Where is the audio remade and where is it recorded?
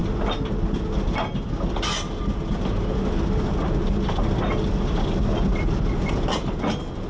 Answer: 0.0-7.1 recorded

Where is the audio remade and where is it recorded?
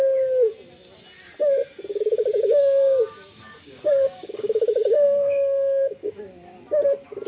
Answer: 0.0-1.9 recorded; 1.9-6.2 remade; 6.2-7.3 recorded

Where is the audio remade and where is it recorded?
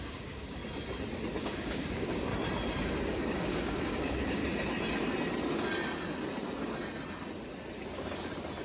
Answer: 0.0-0.6 remade; 0.6-1.4 recorded; 1.4-2.3 remade; 2.3-3.1 recorded; 3.1-4.4 remade; 4.4-8.6 recorded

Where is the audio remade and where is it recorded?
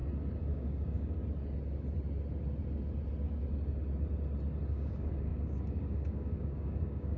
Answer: 0.0-0.5 recorded; 0.5-1.2 remade; 1.2-4.7 recorded; 4.7-7.2 remade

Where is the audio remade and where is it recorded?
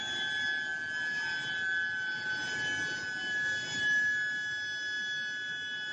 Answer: 0.0-5.9 recorded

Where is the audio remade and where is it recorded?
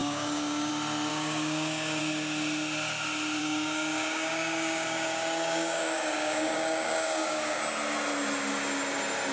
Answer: 0.0-0.7 remade; 0.7-1.1 recorded; 1.1-2.0 remade; 2.0-3.4 recorded; 3.4-7.6 remade; 7.6-9.3 recorded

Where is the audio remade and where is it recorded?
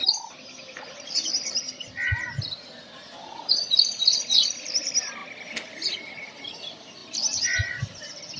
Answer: 0.0-8.4 recorded